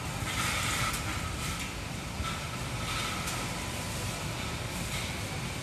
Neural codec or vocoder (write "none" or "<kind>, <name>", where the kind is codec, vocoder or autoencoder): none